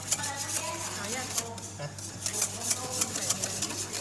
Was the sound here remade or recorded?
recorded